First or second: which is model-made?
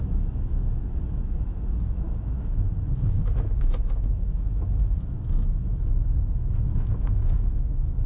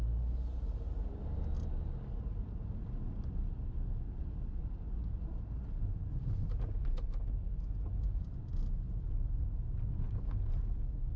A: first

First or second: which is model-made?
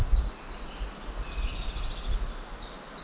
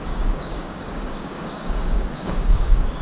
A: second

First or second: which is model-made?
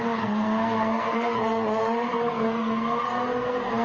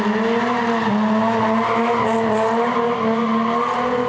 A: first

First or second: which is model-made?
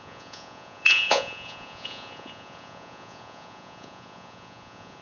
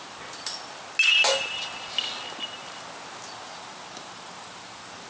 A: first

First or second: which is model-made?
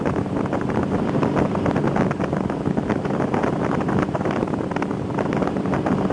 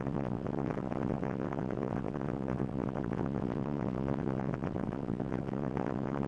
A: second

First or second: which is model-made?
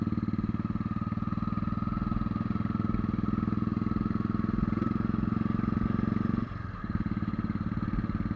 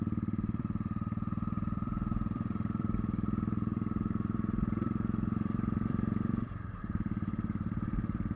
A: second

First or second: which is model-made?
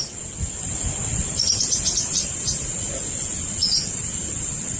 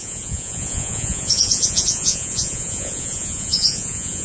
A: second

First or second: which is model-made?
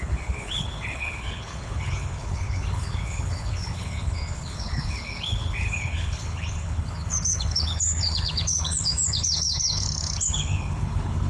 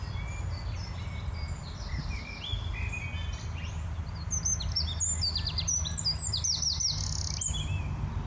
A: first